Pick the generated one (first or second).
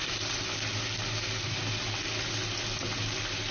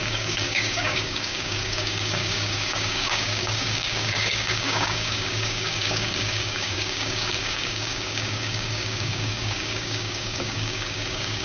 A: second